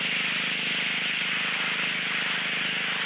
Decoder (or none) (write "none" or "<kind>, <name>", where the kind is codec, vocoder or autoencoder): none